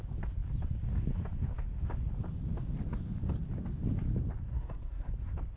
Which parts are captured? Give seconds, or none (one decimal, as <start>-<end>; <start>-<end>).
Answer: 0.0-4.5; 5.1-5.6